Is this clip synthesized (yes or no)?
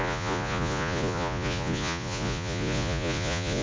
yes